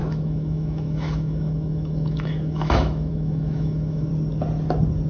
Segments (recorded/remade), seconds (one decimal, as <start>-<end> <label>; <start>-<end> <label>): 0.0-4.1 remade; 4.1-5.1 recorded